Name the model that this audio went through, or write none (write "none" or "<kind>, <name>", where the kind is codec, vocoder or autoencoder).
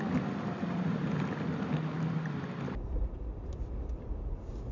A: none